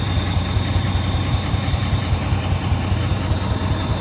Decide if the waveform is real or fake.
fake